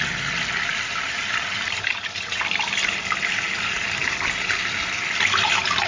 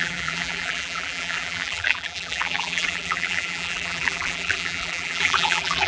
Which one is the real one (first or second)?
first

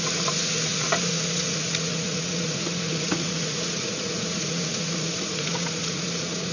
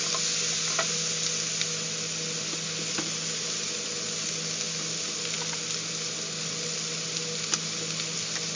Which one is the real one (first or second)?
second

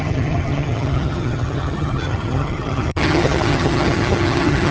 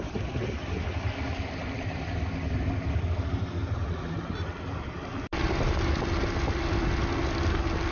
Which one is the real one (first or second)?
second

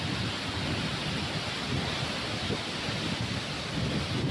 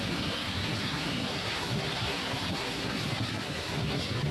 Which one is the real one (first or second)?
first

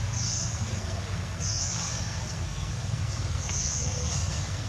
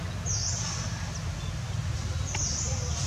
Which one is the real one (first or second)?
second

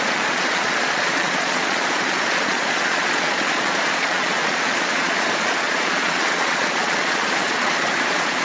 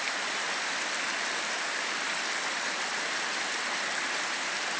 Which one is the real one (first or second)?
second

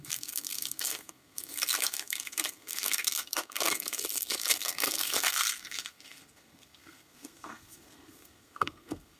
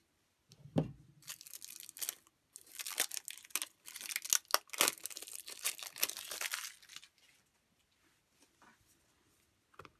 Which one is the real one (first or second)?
second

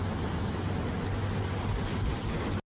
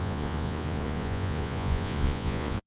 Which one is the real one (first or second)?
first